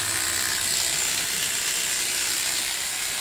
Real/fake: real